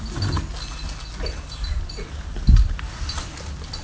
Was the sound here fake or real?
real